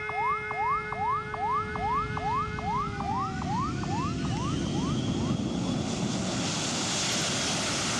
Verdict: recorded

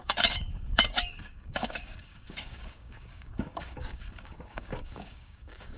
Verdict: remade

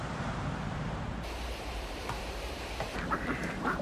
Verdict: remade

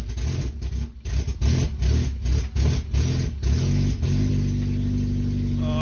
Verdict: recorded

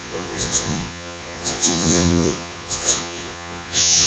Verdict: remade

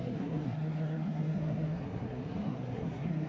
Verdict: remade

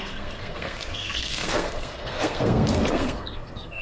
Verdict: remade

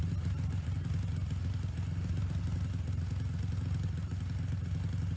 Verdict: recorded